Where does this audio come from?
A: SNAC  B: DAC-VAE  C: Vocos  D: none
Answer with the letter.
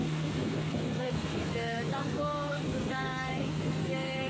A